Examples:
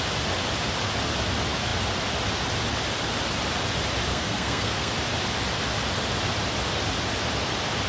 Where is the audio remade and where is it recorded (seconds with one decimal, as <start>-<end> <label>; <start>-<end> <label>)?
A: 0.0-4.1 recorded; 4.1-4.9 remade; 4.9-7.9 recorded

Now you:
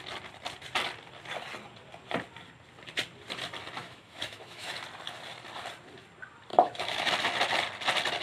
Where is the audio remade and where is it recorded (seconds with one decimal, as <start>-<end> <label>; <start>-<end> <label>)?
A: 0.0-3.8 recorded; 3.8-4.7 remade; 4.7-6.5 recorded; 6.5-7.1 remade; 7.1-8.2 recorded

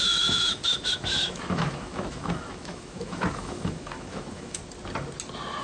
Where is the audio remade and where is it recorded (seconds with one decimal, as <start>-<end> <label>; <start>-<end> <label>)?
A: 0.0-4.6 remade; 4.6-5.6 recorded